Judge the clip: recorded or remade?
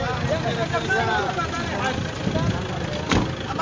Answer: recorded